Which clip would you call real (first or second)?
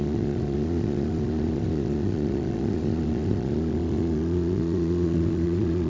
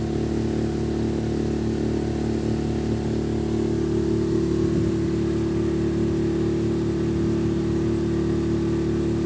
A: second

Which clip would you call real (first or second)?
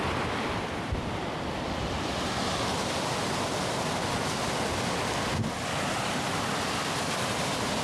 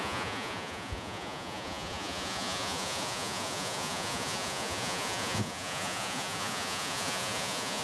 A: first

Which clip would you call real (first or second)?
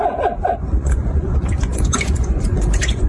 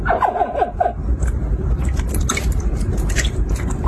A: second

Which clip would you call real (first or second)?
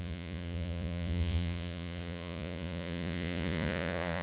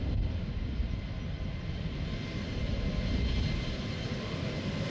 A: second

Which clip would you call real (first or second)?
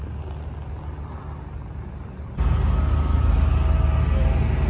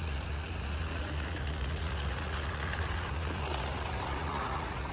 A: first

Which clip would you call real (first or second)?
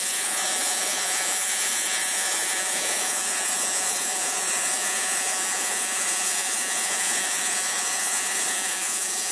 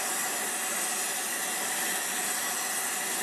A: second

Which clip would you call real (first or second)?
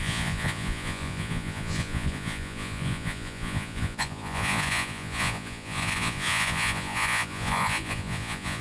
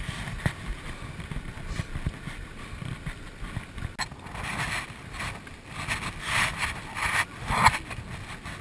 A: second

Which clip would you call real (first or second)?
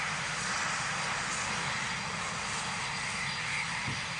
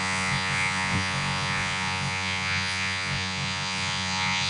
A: first